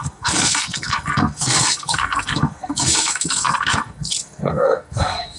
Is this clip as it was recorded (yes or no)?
no